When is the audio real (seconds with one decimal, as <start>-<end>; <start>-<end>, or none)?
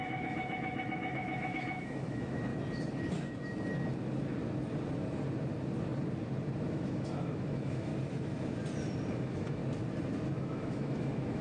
2.5-6.7; 7.9-9.1; 9.6-10.3